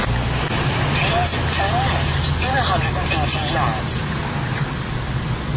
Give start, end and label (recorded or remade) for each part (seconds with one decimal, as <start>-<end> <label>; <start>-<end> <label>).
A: 0.0-5.6 recorded